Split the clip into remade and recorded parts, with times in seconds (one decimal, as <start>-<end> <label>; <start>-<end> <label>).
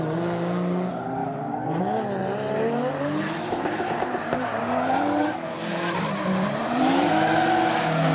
0.0-1.2 recorded; 1.2-1.8 remade; 1.8-2.2 recorded; 2.2-7.1 remade; 7.1-8.1 recorded